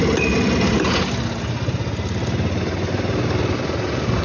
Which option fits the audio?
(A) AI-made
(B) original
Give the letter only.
B